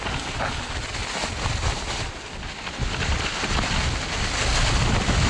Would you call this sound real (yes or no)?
yes